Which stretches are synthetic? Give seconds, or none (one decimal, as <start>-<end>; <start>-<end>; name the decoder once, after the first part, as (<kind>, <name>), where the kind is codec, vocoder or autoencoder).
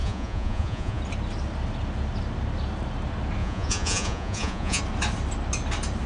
0.0-1.0 (vocoder, Vocos); 3.4-4.8